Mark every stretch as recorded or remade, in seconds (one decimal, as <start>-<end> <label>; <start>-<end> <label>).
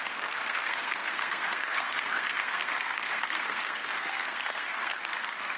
0.0-5.6 remade